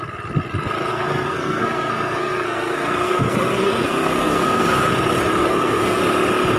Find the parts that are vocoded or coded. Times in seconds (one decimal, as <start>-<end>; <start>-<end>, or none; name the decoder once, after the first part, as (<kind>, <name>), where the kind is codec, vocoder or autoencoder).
0.9-4.9 (codec, SNAC); 5.4-6.0